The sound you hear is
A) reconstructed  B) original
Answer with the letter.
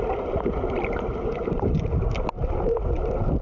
B